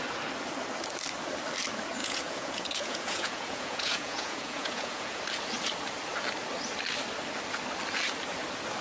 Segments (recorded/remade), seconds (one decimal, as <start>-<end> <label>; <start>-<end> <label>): 0.0-2.0 recorded; 2.0-5.2 remade; 5.2-8.8 recorded